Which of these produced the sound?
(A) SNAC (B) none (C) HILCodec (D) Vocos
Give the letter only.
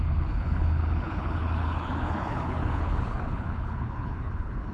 C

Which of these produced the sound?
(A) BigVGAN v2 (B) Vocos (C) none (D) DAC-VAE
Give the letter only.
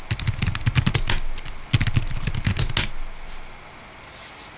C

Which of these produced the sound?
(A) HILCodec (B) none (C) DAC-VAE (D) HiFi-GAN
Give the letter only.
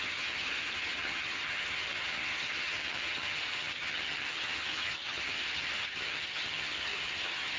D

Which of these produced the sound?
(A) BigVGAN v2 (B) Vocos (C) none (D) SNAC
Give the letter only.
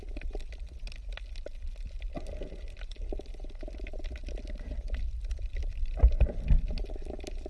C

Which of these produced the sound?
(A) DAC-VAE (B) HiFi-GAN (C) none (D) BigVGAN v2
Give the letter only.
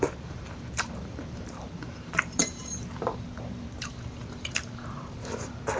D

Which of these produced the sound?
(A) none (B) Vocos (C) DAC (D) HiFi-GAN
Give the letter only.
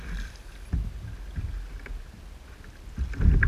A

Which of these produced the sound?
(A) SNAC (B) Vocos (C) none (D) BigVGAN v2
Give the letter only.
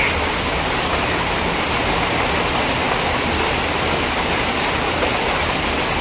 C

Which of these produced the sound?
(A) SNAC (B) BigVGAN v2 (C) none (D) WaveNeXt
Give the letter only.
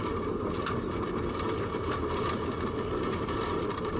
B